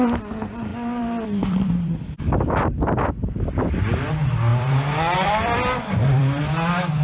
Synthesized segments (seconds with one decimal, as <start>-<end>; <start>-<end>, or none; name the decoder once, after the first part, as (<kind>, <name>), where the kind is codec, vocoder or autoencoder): 0.7-4.1 (vocoder, BigVGAN v2); 4.5-6.4